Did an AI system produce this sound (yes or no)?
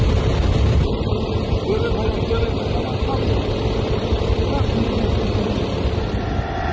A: no